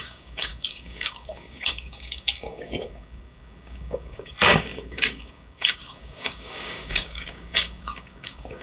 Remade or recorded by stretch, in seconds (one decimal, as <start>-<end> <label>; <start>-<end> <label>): 0.0-8.6 remade